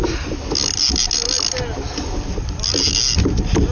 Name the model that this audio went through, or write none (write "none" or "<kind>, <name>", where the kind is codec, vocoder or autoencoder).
none